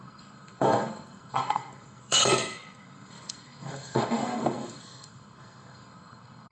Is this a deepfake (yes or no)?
yes